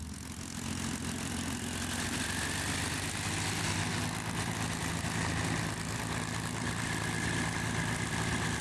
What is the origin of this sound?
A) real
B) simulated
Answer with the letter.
A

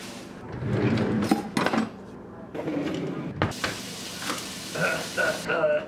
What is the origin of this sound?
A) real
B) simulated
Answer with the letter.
A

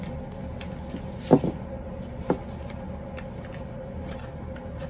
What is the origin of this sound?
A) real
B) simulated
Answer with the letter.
A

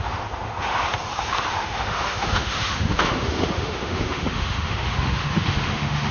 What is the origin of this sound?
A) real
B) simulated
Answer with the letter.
B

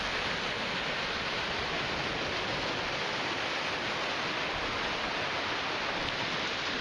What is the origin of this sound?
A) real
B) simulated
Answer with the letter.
A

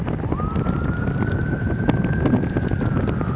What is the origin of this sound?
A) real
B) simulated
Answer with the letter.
A